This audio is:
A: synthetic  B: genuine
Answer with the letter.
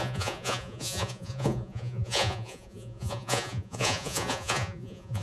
A